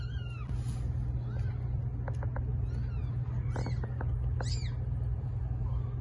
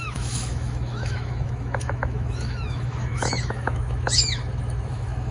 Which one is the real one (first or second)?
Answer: first